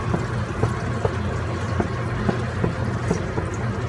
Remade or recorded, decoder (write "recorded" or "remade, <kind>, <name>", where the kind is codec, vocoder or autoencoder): recorded